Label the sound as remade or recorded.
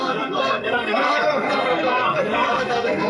remade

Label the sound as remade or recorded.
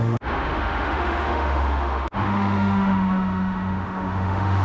remade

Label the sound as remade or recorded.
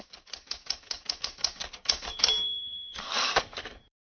remade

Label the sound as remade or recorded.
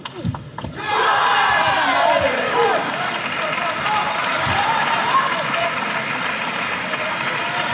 recorded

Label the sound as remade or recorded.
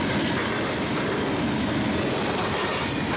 recorded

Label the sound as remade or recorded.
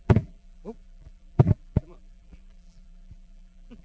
remade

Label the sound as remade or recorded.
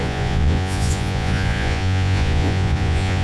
remade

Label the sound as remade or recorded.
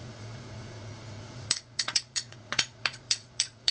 remade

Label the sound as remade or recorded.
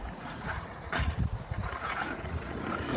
remade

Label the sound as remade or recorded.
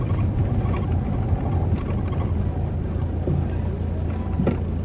recorded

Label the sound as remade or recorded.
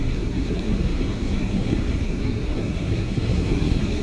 remade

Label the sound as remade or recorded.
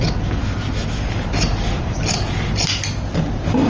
recorded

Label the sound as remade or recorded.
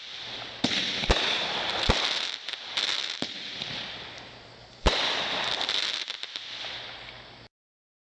recorded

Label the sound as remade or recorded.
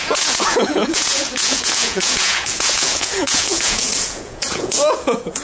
remade